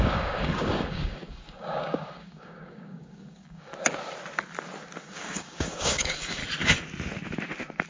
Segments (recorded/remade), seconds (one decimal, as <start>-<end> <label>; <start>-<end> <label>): 0.0-3.7 remade; 3.7-5.0 recorded; 5.0-6.4 remade; 6.4-7.9 recorded